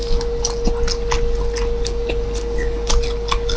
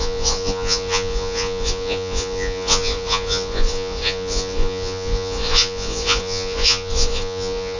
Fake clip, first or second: second